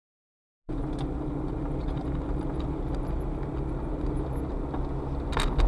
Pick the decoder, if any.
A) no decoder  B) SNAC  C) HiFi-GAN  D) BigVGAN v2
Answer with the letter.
A